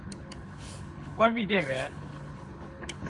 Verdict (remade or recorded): remade